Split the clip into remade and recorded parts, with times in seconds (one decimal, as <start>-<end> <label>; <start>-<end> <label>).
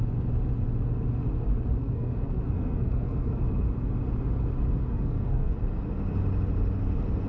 0.0-1.8 recorded; 1.8-3.4 remade; 3.4-4.9 recorded; 4.9-5.5 remade; 5.5-7.3 recorded